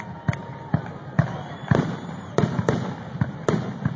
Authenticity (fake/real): real